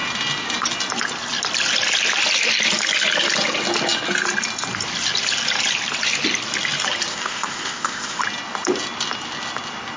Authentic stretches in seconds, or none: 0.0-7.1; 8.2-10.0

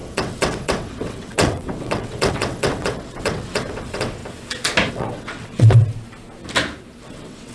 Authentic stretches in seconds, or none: 4.2-4.9; 5.8-7.1

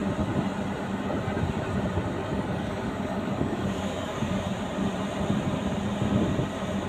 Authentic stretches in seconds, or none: 0.0-2.3; 4.5-6.9

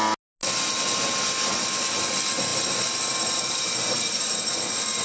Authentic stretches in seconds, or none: 0.0-5.0

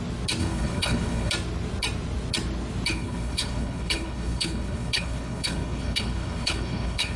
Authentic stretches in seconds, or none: 0.0-0.4; 1.3-2.9

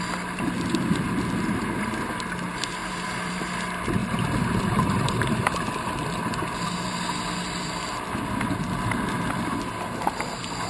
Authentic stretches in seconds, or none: 0.0-2.8; 3.4-4.0; 5.5-10.7